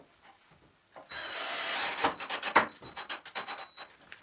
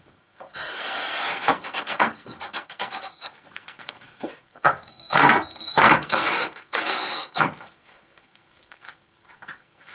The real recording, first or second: first